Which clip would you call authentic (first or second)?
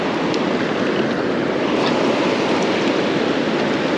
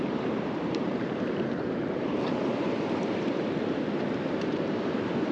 first